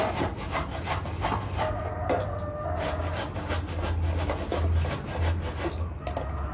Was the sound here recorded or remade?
recorded